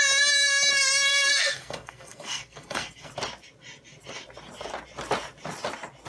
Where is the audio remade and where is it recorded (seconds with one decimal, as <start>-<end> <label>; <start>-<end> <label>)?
0.0-1.1 recorded; 1.1-3.1 remade; 3.1-6.1 recorded